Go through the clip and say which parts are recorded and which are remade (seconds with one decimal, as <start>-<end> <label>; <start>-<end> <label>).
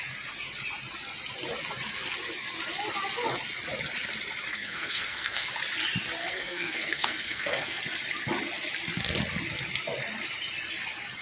0.0-4.5 recorded; 4.5-5.5 remade; 5.5-6.2 recorded; 6.2-7.8 remade; 7.8-11.2 recorded